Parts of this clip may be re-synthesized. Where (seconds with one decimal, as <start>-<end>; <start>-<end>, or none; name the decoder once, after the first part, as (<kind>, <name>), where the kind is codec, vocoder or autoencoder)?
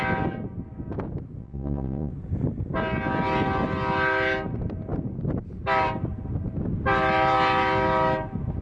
1.4-2.1 (vocoder, Vocos)